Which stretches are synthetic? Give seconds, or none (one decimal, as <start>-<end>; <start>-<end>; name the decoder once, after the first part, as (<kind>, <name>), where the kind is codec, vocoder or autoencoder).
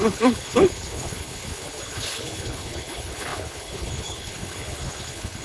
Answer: 0.0-5.4 (codec, HILCodec)